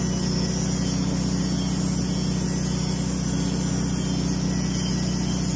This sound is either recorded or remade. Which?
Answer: recorded